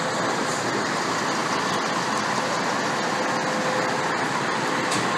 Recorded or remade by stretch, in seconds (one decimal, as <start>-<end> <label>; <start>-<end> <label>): 0.0-5.2 recorded